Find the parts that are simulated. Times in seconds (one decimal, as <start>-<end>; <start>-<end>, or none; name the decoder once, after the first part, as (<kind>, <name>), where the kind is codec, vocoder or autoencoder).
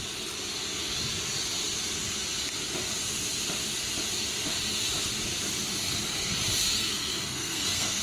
6.6-8.0 (codec, SNAC)